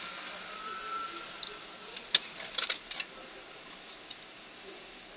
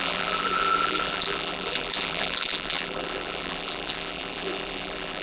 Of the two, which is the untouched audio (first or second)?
first